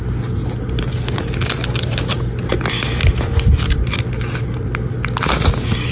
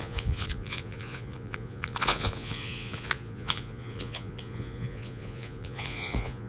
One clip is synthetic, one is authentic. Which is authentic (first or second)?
first